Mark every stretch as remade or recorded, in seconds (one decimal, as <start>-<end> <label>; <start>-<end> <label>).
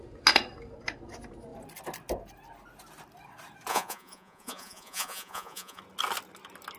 0.0-3.7 recorded; 3.7-5.8 remade; 5.8-6.8 recorded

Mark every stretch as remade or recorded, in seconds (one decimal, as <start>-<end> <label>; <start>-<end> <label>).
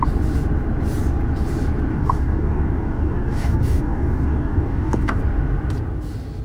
0.0-1.9 recorded; 1.9-5.2 remade; 5.2-6.4 recorded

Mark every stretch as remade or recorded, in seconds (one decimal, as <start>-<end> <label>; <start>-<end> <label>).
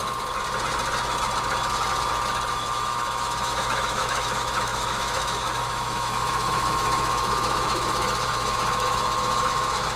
0.0-2.5 recorded; 2.5-10.0 remade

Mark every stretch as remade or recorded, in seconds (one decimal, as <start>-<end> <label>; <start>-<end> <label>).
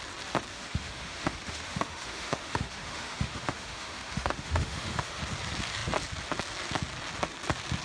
0.0-0.5 recorded; 0.5-5.2 remade; 5.2-7.8 recorded